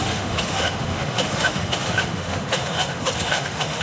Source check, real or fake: fake